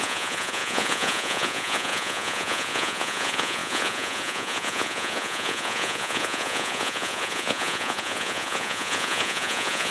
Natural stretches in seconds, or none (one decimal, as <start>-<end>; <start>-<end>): none